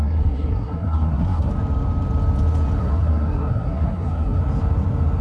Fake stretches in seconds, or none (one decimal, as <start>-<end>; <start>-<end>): 0.0-1.5; 2.8-4.4